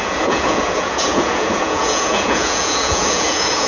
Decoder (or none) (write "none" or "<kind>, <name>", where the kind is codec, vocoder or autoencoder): vocoder, Vocos